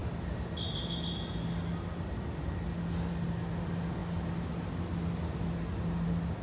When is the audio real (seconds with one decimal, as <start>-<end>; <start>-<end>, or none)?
0.0-6.4